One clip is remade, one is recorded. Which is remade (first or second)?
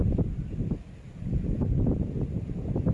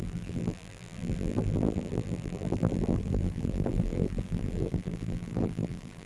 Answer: second